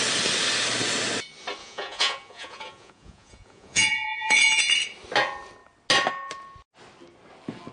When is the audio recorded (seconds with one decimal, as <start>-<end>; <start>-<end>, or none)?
0.0-1.6; 4.6-7.7